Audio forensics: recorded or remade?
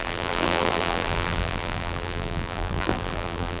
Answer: remade